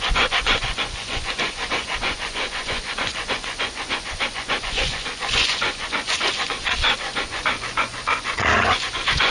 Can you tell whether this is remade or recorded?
remade